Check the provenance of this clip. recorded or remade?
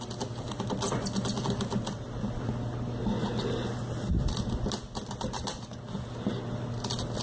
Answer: recorded